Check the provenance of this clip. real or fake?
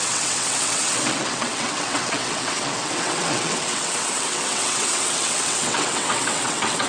fake